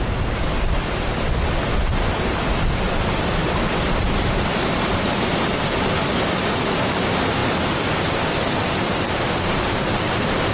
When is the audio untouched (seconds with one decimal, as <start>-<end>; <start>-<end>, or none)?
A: 6.0-6.6